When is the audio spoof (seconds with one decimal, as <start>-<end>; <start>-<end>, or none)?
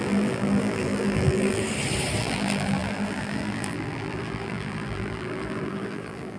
0.0-1.6; 2.2-6.4